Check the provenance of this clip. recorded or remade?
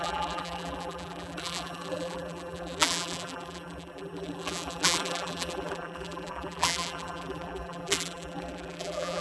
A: remade